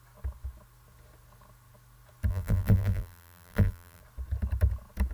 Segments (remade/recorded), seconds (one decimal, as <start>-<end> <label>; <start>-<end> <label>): 0.0-2.3 recorded; 2.3-4.0 remade; 4.0-5.1 recorded